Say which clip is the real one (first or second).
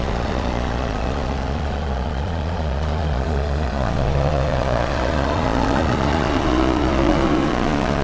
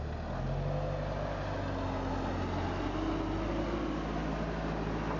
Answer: second